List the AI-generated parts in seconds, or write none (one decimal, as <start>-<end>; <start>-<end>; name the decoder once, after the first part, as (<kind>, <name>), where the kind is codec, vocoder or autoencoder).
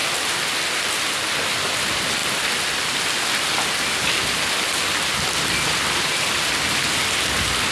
none